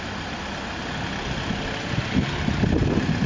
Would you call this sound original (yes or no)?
yes